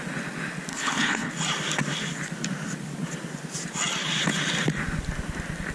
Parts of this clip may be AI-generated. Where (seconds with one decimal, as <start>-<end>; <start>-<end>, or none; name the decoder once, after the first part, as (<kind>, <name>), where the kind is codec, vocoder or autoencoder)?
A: 0.7-1.3 (codec, HILCodec)